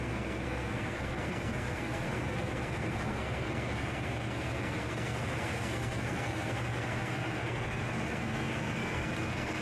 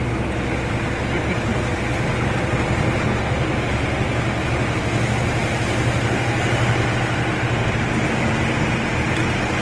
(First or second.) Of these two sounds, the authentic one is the second